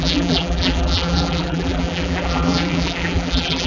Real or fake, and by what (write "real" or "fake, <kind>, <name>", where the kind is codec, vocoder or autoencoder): fake, vocoder, BigVGAN v2